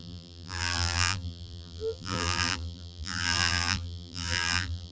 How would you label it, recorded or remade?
remade